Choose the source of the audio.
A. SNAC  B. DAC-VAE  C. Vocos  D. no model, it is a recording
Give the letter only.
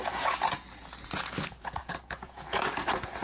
C